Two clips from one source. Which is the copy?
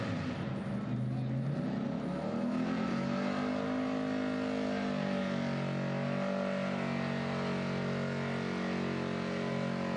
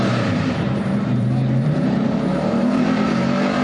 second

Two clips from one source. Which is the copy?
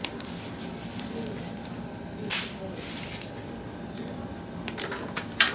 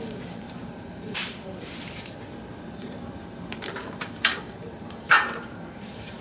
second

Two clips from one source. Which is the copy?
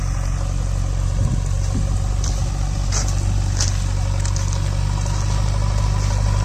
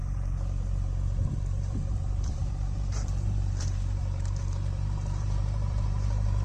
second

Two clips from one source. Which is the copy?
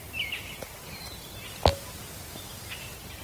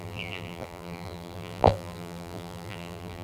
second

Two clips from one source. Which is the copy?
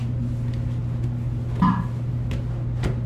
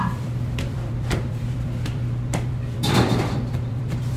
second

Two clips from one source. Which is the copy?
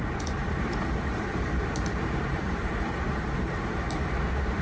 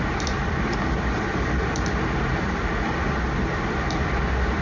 first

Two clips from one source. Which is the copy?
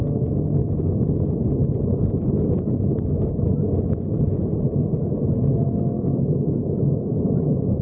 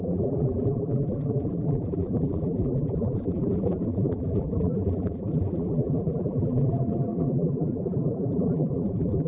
second